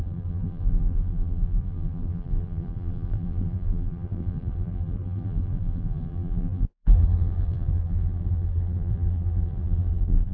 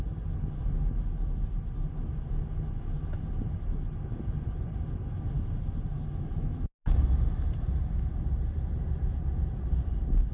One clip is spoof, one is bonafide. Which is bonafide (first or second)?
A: second